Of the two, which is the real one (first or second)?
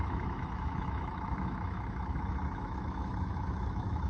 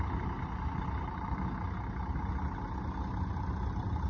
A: second